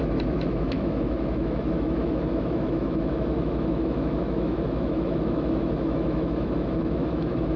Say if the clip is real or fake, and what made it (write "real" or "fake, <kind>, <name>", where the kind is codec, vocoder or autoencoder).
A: fake, autoencoder, DAC-VAE